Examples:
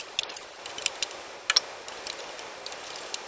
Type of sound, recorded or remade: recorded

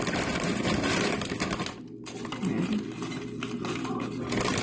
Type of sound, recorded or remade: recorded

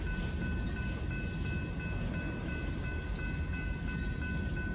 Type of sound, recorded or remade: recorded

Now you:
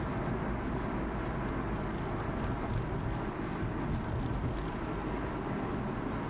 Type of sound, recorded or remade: recorded